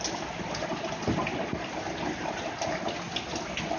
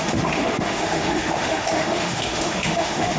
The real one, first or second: first